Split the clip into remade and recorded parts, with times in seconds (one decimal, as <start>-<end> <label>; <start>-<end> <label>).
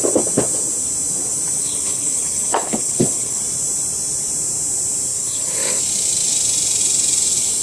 0.0-1.6 recorded; 1.6-3.4 remade; 3.4-5.1 recorded; 5.1-5.8 remade; 5.8-7.6 recorded